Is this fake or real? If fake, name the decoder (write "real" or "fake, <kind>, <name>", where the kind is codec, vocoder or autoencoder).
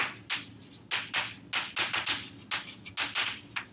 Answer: real